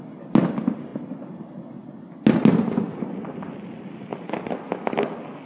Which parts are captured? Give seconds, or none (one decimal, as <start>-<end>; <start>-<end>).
0.0-5.5